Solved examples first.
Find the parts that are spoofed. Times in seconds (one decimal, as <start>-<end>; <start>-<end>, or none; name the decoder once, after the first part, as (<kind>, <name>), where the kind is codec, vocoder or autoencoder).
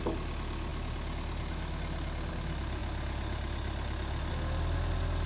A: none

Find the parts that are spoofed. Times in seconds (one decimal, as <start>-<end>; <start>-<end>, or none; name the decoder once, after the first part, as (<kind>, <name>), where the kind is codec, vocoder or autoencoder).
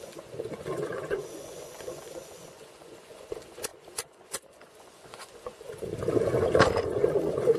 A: 0.0-5.9 (vocoder, Vocos); 6.6-7.6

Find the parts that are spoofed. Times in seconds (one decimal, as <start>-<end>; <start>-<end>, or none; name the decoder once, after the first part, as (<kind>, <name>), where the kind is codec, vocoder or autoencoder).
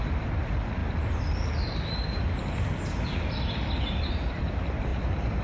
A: none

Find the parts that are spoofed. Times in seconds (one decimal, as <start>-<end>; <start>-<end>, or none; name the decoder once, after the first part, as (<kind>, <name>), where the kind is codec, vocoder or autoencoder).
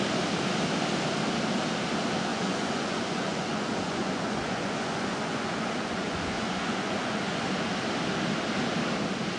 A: 2.3-7.5 (vocoder, Vocos)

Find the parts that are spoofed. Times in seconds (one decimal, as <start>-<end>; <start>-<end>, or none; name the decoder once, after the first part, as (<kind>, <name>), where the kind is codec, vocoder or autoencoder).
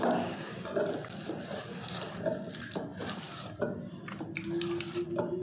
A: none